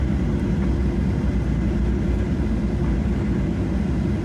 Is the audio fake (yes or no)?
no